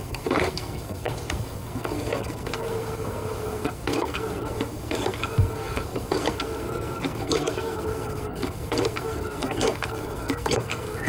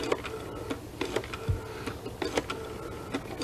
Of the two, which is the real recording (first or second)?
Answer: second